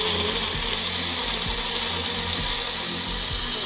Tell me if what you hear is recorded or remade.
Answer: recorded